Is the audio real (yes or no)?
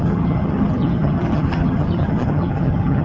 no